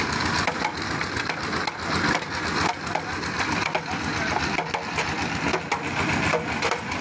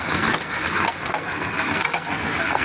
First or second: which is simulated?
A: second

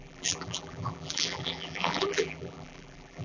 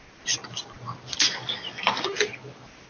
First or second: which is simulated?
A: first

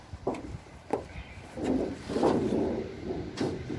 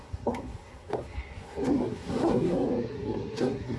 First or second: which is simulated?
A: second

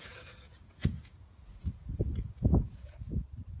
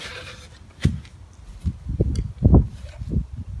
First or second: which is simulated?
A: first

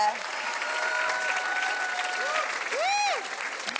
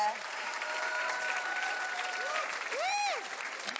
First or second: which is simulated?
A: second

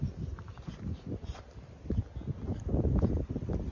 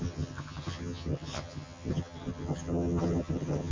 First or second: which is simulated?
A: second